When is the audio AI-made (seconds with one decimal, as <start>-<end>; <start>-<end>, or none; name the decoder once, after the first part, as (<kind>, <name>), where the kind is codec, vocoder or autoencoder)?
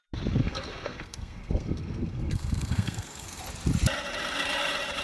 0.4-3.4 (codec, SNAC)